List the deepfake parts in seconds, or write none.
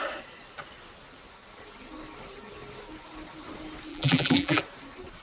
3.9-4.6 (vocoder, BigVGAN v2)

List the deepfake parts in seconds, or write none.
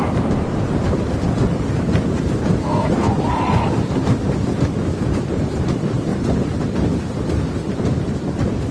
2.6-3.1 (codec, SNAC)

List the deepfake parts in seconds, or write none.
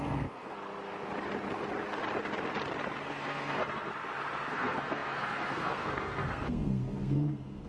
0.0-0.6 (codec, SNAC); 3.1-3.9; 4.5-7.7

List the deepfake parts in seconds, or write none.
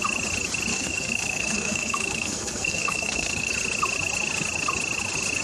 0.7-3.5 (codec, SNAC)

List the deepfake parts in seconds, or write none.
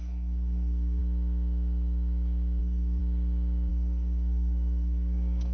0.0-1.0 (codec, SNAC); 2.6-3.0; 3.7-5.5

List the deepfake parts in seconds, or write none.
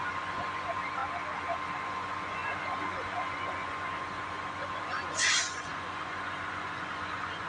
0.0-1.0 (vocoder, Vocos); 1.8-7.5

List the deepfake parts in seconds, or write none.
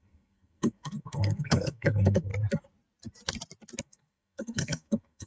0.0-2.3 (codec, SNAC); 3.8-5.3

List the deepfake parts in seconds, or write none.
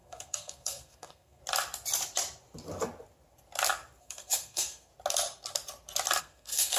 0.0-1.4 (codec, SNAC); 4.0-4.9; 6.2-6.8